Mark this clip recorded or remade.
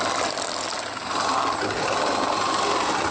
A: recorded